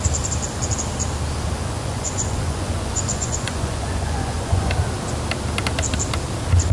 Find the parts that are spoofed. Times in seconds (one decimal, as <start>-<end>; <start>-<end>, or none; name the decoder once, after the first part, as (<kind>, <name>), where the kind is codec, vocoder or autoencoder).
1.6-4.7 (vocoder, Vocos)